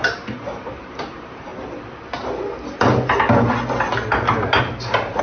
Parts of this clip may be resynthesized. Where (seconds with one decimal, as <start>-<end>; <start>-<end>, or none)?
0.0-1.5; 4.6-5.2